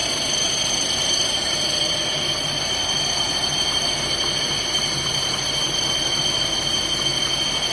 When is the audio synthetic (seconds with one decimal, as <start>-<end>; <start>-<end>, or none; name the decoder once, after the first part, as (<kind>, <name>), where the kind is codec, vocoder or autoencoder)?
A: 0.0-4.0 (vocoder, BigVGAN v2); 5.1-6.2